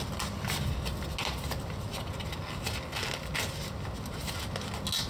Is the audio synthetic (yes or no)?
no